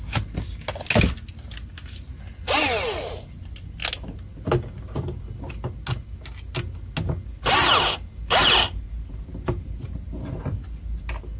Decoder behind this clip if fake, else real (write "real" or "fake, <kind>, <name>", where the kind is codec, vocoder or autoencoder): real